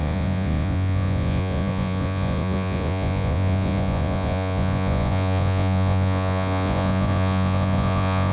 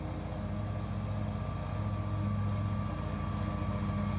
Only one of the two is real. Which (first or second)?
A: second